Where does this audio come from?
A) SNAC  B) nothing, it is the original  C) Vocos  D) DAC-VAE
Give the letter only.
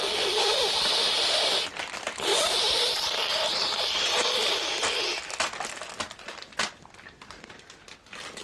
B